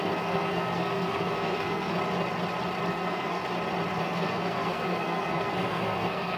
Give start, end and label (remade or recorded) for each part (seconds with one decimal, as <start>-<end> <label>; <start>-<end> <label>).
0.0-2.0 remade; 2.0-2.9 recorded; 2.9-3.4 remade; 3.4-4.0 recorded; 4.0-6.4 remade